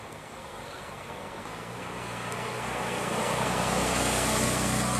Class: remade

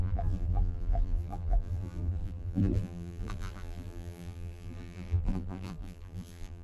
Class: remade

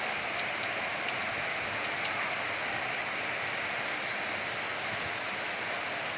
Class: recorded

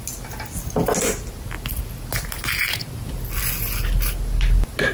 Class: recorded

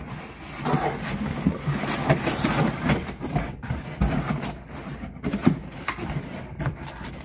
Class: remade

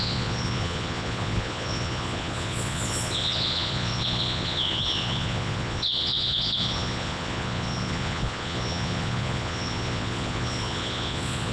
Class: remade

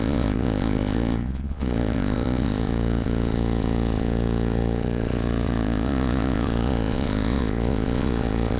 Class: remade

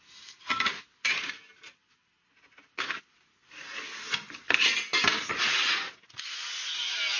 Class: recorded